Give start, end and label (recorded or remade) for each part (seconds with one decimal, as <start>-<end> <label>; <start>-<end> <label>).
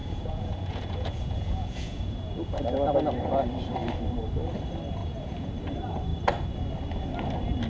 0.0-2.6 remade; 2.6-5.0 recorded; 5.0-5.5 remade; 5.5-7.7 recorded